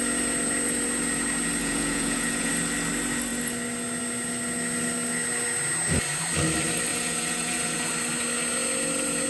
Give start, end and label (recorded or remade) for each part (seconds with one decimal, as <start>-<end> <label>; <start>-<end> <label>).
0.0-1.6 recorded; 1.6-2.5 remade; 2.5-6.9 recorded; 6.9-7.9 remade; 7.9-9.3 recorded